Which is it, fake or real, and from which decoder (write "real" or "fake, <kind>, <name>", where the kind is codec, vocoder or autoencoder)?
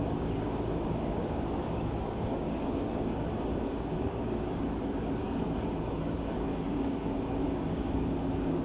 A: fake, codec, DAC